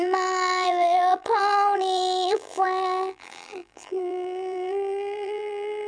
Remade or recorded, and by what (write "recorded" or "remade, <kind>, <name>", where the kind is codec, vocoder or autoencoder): remade, vocoder, BigVGAN v2